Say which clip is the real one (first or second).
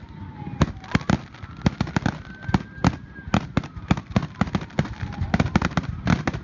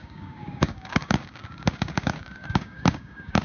first